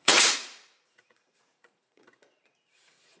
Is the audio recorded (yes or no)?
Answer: no